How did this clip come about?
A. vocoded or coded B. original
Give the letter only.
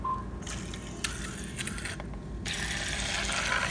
B